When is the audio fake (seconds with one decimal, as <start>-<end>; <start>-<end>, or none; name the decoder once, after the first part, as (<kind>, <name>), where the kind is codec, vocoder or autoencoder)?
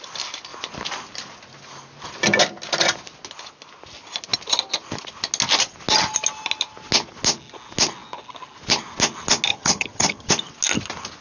9.5-10.3 (vocoder, HiFi-GAN)